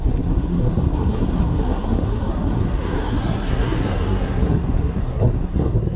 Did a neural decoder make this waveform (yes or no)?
yes